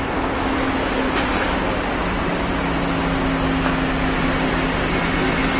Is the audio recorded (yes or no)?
yes